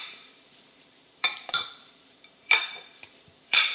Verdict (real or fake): fake